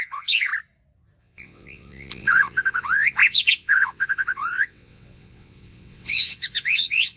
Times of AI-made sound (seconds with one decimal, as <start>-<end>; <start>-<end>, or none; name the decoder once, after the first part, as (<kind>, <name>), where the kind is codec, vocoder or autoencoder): 0.0-0.5 (vocoder, WaveNeXt); 1.2-7.2